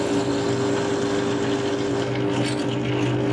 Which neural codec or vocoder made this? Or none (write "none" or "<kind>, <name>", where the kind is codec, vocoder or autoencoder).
none